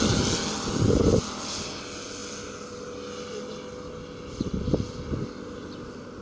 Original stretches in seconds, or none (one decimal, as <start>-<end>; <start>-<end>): 0.0-6.2